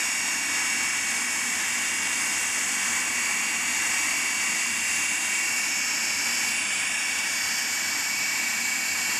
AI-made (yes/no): no